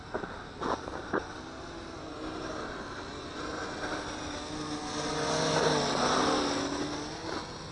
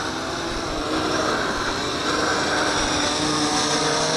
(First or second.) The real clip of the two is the first